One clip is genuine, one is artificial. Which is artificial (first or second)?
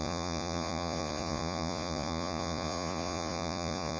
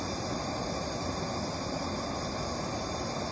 first